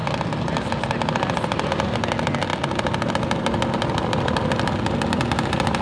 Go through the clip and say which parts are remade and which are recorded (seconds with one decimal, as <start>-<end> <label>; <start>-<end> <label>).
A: 0.0-5.8 recorded